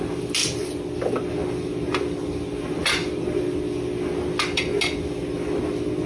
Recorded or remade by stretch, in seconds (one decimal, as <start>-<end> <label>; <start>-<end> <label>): 0.0-6.1 recorded